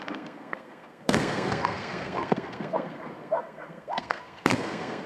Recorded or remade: remade